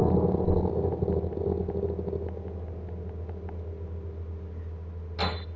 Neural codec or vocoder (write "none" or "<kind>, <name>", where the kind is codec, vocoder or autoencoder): none